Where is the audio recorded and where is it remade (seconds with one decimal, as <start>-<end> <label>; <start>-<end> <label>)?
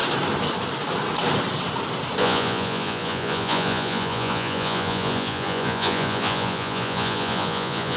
0.0-2.2 recorded; 2.2-8.0 remade